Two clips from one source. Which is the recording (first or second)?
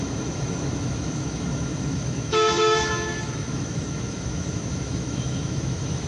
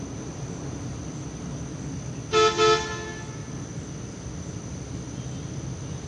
second